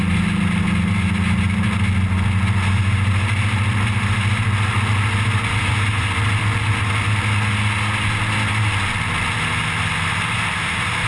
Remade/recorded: recorded